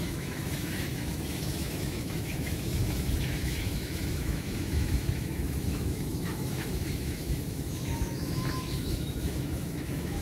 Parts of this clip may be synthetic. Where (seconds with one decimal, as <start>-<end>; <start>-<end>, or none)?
0.0-10.2